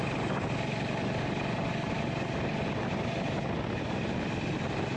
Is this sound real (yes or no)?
yes